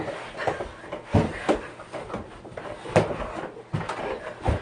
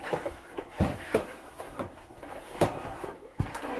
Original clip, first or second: first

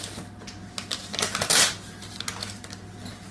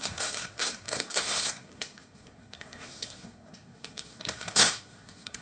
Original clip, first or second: first